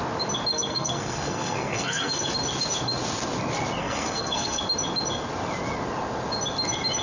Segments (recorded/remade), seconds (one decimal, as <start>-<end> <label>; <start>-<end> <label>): 0.0-0.5 recorded; 0.5-2.3 remade; 2.3-3.8 recorded; 3.8-4.6 remade; 4.6-7.0 recorded

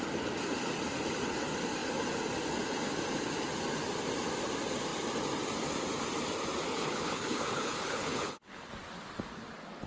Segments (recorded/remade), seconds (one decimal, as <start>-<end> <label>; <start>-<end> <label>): 0.0-6.7 recorded; 6.7-8.7 remade; 8.7-9.9 recorded